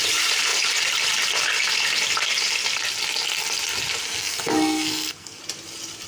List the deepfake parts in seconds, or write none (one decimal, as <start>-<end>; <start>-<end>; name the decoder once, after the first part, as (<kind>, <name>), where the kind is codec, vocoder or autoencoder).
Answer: 4.0-5.4 (codec, SNAC)